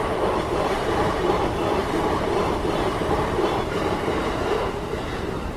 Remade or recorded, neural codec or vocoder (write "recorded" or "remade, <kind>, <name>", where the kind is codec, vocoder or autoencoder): remade, vocoder, BigVGAN v2